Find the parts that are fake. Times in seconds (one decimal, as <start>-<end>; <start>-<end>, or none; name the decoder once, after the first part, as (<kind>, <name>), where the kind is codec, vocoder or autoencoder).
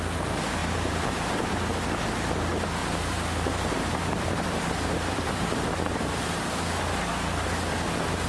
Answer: 2.8-6.6 (vocoder, BigVGAN v2)